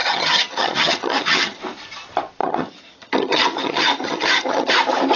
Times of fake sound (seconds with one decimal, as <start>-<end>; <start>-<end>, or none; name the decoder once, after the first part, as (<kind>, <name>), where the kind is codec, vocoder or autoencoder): 0.0-1.6 (vocoder, HiFi-GAN); 2.4-4.7